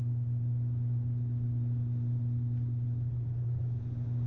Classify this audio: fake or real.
real